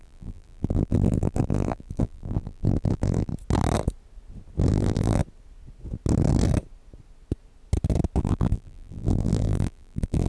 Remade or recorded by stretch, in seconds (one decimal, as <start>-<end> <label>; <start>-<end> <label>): 0.0-3.3 remade; 3.3-4.7 recorded; 4.7-5.2 remade; 5.2-8.2 recorded; 8.2-10.3 remade